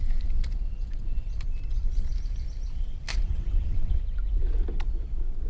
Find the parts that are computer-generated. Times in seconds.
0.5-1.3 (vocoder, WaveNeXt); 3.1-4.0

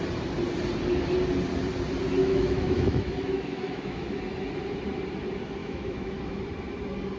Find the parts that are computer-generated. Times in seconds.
2.2-4.2 (autoencoder, DAC-VAE); 5.6-6.4

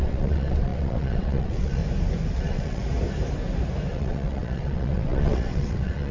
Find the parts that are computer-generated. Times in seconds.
0.0-1.8 (vocoder, WaveNeXt); 2.4-2.8; 3.9-6.1

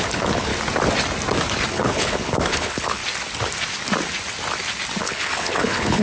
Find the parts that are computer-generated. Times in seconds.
0.0-0.5 (codec, HILCodec); 1.7-3.0; 5.0-6.0